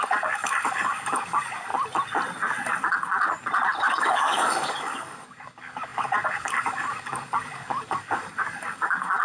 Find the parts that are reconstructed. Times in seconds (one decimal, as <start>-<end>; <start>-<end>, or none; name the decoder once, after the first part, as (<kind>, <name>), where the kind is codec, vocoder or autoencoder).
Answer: 0.0-1.7 (codec, DAC); 3.8-9.2